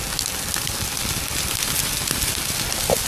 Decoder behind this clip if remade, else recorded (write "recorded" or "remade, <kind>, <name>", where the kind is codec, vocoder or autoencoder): recorded